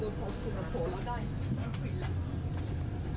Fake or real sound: real